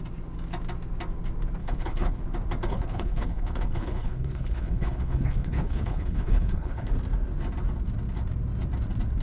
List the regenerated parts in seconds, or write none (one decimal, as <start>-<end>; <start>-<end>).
1.6-2.2; 2.7-6.9